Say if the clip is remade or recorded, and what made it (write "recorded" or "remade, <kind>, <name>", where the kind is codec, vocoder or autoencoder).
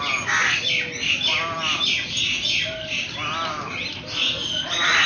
recorded